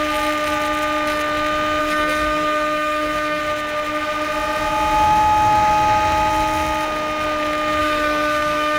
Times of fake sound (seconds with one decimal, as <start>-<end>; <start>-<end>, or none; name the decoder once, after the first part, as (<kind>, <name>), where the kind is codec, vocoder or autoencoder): 1.8-3.4 (codec, SNAC); 7.8-8.8